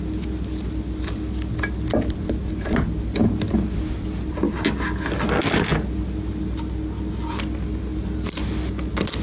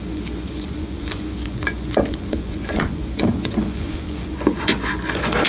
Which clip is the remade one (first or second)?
second